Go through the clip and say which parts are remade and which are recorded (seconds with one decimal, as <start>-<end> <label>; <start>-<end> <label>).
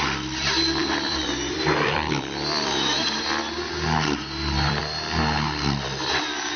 0.0-0.8 recorded; 0.8-4.8 remade; 4.8-6.6 recorded